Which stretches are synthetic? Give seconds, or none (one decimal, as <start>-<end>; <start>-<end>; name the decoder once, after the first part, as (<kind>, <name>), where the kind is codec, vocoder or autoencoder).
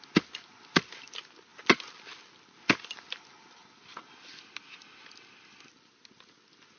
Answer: none